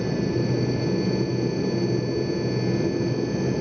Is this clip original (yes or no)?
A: yes